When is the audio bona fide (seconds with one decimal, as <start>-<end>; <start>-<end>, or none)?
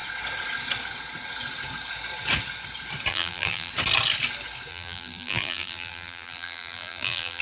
0.0-3.1; 3.7-4.7